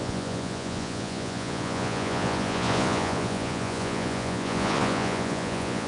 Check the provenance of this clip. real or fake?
fake